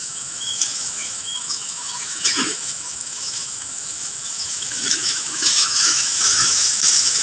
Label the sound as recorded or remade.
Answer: remade